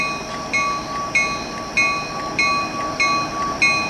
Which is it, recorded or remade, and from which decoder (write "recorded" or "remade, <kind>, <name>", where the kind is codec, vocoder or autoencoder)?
recorded